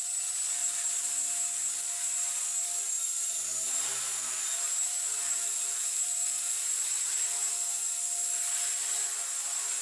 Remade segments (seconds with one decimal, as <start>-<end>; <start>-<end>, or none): 0.6-1.2; 3.5-7.5